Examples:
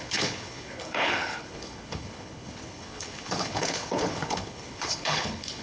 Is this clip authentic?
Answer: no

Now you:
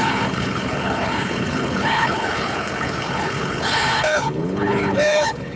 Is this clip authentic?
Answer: no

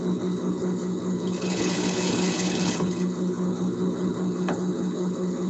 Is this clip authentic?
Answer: no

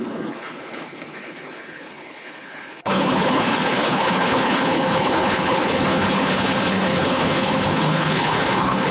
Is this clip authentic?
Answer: no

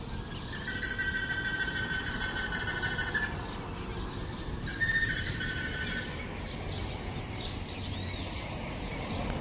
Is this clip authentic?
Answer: yes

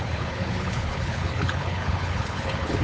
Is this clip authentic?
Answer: no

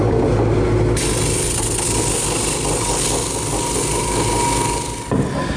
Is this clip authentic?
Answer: yes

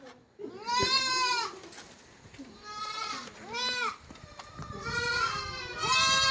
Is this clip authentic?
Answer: yes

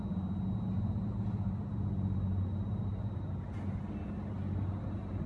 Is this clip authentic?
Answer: yes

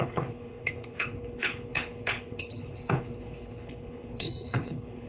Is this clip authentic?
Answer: no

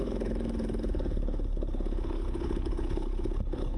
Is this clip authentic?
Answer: no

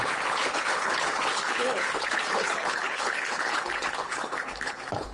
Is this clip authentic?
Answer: no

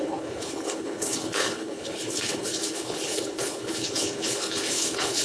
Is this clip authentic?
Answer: no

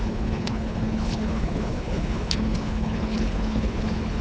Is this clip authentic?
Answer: no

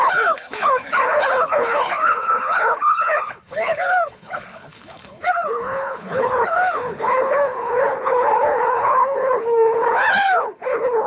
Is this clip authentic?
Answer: no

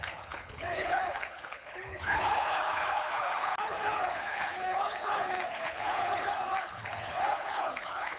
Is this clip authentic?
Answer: no